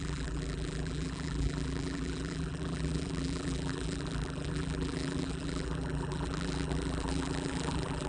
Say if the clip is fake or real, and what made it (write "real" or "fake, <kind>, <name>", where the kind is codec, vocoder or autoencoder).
fake, vocoder, BigVGAN v2